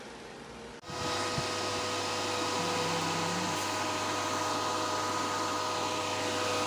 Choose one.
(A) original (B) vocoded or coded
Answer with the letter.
A